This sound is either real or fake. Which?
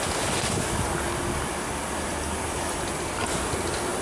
real